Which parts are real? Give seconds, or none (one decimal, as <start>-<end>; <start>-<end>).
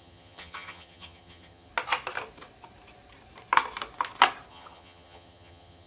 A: 1.7-4.5